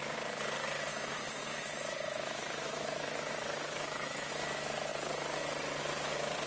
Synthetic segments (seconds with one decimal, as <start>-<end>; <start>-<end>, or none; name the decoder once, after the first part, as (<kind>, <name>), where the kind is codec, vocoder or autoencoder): 0.9-4.3 (autoencoder, DAC-VAE)